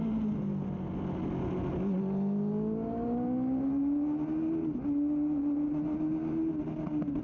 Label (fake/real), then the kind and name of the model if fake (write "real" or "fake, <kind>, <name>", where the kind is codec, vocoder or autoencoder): real